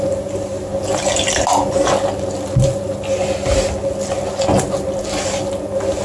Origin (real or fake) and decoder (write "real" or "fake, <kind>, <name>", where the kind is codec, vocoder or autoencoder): real